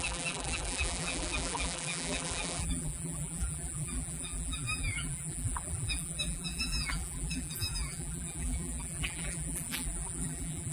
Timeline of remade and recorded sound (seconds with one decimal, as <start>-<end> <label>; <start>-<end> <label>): 0.0-10.7 remade